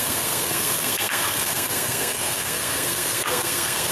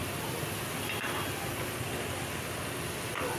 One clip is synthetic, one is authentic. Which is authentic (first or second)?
second